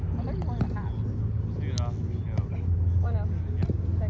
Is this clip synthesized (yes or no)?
no